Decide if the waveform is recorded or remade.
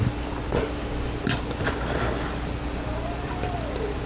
recorded